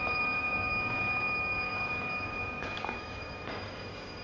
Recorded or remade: remade